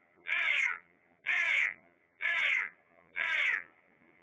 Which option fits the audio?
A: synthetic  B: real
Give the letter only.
A